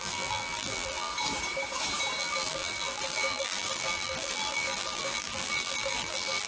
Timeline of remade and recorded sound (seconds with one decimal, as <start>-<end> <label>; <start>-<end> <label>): 0.0-1.1 remade; 1.1-2.2 recorded; 2.2-6.5 remade